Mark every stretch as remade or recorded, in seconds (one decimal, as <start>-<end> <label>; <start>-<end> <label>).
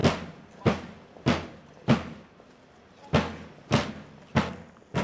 0.0-5.0 recorded